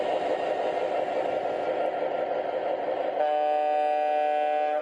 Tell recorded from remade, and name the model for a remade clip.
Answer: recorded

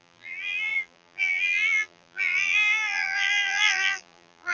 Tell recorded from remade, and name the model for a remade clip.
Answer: remade, vocoder, BigVGAN v2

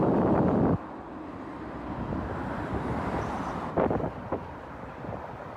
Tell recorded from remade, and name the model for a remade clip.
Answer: remade, vocoder, BigVGAN v2